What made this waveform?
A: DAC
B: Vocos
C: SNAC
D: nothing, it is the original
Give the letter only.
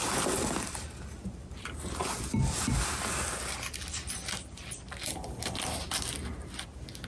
D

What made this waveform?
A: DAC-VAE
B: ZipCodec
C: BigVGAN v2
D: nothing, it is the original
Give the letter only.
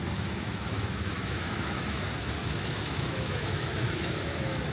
A